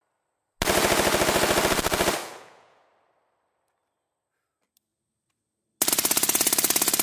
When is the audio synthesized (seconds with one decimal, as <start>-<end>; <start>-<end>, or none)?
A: 2.2-2.9